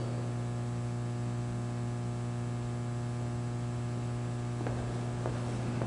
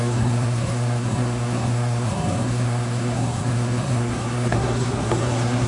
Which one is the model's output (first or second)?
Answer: second